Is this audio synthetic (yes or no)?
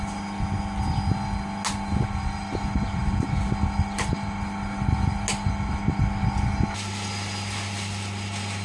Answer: no